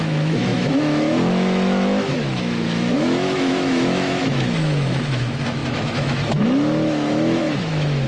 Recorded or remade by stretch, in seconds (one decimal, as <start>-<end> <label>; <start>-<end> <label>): 0.0-8.1 remade